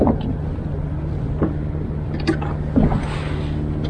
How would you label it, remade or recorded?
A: recorded